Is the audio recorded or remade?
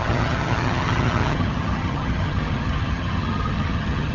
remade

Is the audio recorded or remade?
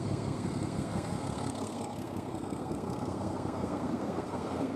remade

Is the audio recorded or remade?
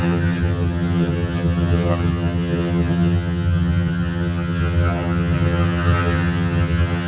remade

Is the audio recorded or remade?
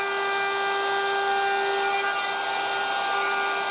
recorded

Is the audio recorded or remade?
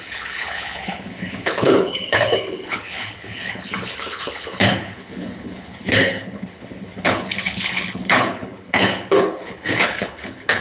remade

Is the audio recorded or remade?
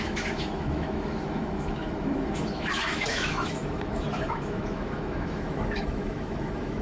remade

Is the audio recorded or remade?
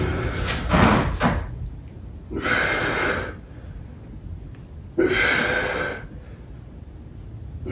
recorded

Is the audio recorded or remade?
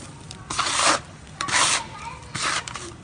remade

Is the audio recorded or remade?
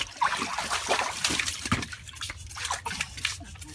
recorded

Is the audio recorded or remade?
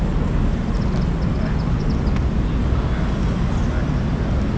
recorded